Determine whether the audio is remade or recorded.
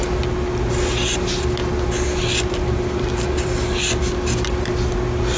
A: recorded